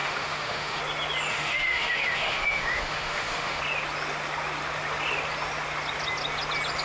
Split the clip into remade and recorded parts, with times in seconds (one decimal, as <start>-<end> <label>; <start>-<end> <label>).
0.0-0.8 remade; 0.8-1.3 recorded; 1.3-3.6 remade; 3.6-6.8 recorded